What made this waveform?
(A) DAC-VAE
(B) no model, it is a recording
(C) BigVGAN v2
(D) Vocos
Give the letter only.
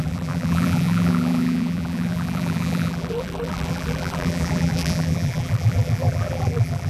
C